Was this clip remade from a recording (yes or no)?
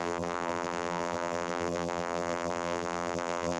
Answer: yes